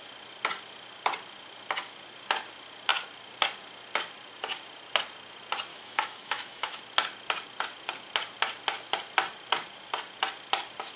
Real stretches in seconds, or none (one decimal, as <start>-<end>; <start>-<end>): 0.0-5.7; 6.8-11.0